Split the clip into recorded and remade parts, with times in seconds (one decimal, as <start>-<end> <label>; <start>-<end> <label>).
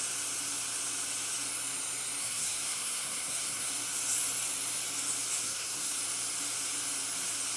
0.0-2.2 recorded; 2.2-3.7 remade; 3.7-5.4 recorded; 5.4-6.0 remade; 6.0-7.6 recorded